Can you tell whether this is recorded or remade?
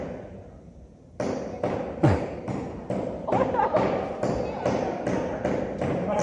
recorded